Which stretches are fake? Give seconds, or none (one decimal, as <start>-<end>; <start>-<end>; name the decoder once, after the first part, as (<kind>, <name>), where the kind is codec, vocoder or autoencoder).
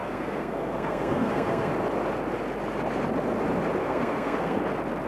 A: 0.0-1.7 (codec, SNAC); 3.8-4.6